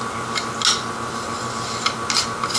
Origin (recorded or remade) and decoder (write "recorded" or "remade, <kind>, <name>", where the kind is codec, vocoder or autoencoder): recorded